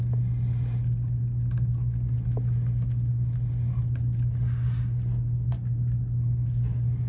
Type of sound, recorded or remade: recorded